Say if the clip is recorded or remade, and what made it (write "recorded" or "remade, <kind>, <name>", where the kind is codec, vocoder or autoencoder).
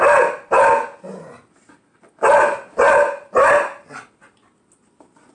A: recorded